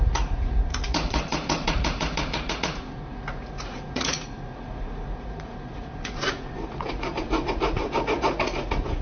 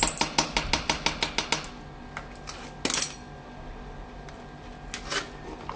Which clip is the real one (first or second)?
second